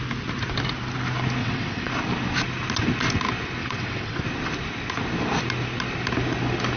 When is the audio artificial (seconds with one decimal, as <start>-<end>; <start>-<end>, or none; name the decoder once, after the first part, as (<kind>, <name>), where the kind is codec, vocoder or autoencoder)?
1.4-1.9 (vocoder, WaveNeXt); 3.6-4.2